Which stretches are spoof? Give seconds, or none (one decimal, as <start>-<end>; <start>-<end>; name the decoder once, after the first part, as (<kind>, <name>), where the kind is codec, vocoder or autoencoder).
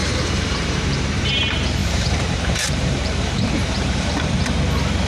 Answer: 0.0-1.3 (vocoder, BigVGAN v2); 1.8-4.4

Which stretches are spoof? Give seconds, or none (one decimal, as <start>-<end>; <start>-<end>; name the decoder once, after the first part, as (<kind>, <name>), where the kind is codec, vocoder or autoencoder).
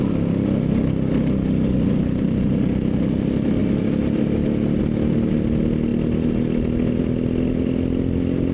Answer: none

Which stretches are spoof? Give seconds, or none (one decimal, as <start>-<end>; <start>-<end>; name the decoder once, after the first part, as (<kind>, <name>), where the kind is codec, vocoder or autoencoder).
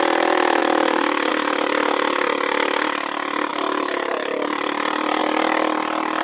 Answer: 0.6-1.3 (vocoder, BigVGAN v2); 3.5-5.2